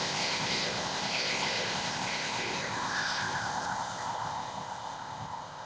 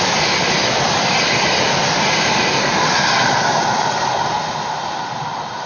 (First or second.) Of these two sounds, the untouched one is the second